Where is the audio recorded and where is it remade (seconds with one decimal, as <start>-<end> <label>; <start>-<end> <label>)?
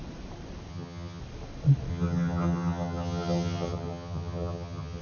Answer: 0.0-0.7 recorded; 0.7-1.2 remade; 1.2-1.9 recorded; 1.9-5.0 remade